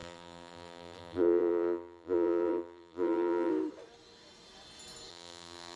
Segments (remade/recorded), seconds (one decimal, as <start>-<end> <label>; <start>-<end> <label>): 0.0-3.5 remade; 3.5-5.1 recorded; 5.1-5.8 remade